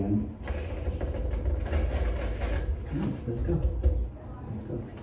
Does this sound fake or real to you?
real